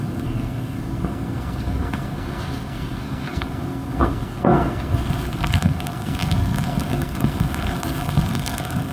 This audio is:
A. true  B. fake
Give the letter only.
B